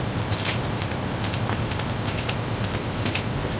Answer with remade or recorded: remade